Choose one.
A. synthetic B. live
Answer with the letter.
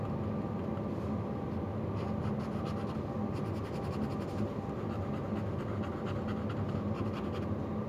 B